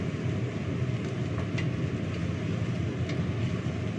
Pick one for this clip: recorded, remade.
recorded